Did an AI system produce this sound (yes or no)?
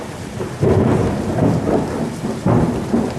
yes